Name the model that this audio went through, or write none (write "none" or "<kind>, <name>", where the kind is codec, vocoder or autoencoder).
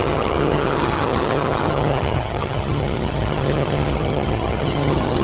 vocoder, HiFi-GAN